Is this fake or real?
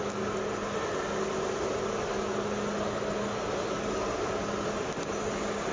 real